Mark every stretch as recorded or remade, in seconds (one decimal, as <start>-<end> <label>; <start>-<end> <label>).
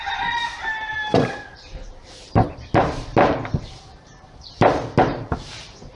0.0-6.0 remade